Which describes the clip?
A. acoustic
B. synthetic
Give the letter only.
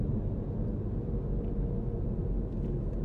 A